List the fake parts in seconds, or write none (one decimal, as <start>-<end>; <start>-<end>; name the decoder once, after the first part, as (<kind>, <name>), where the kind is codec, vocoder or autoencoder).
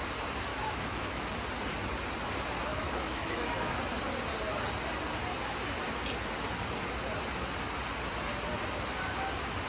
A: 0.5-1.3 (autoencoder, DAC-VAE); 2.7-3.7